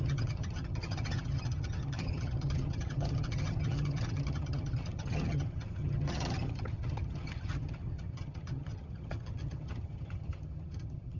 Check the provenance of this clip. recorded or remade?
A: remade